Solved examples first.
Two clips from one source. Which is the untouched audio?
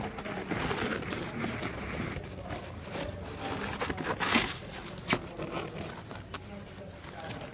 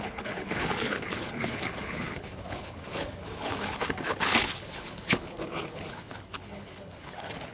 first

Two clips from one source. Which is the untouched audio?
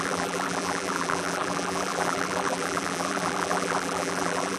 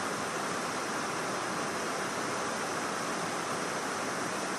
second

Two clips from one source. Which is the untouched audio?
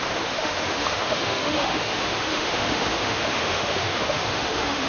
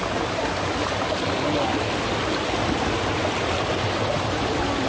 second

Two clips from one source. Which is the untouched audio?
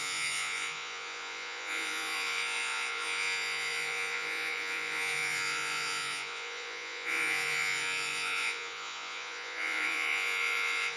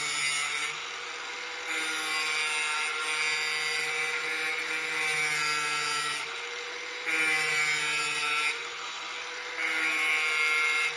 second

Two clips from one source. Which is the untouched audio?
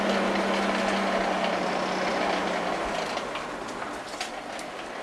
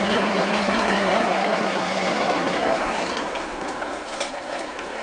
first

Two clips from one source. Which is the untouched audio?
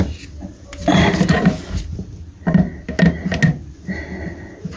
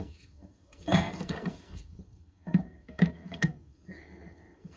first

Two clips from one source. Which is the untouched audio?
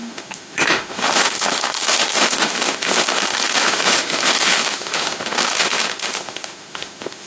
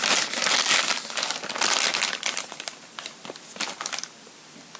second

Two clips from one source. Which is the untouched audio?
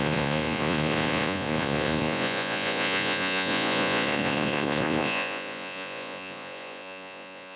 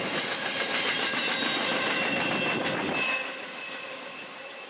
second